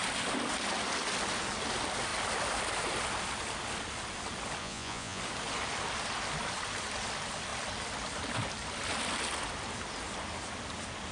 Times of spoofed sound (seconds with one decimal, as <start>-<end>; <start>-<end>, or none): 4.6-5.2